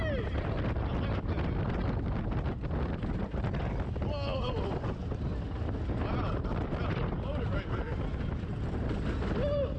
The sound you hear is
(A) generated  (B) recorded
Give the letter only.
B